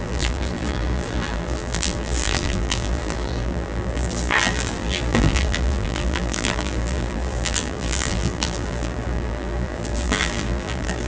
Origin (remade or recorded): remade